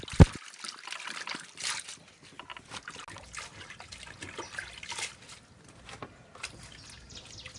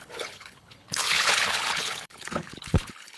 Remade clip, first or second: second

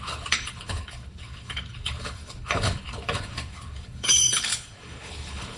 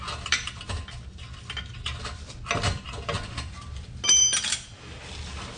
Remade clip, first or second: first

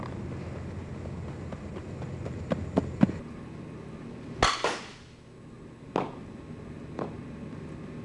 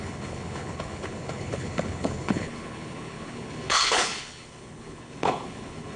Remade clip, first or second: second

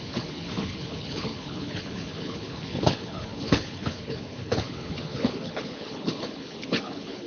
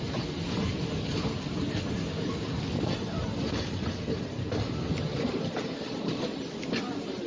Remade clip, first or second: first